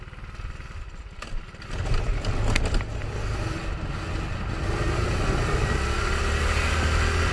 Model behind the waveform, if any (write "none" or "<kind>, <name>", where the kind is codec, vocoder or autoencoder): none